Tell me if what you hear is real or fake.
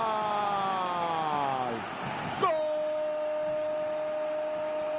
real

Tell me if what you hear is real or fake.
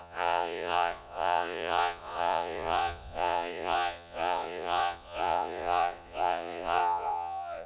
fake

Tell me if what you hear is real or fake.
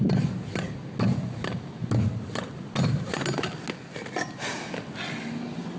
real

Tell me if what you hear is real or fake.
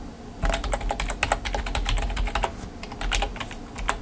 real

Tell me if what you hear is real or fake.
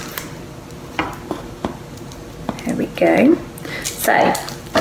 real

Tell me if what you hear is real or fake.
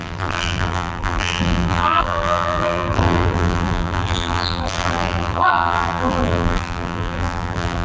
fake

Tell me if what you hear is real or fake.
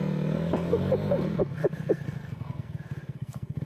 fake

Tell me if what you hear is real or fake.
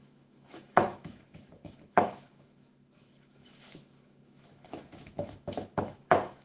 fake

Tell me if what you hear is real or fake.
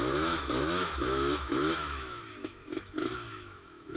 fake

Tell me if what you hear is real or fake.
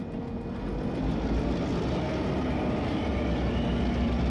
real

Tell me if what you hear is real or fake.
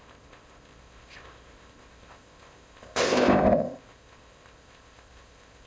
fake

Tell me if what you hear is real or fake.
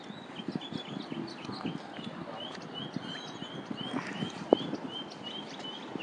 real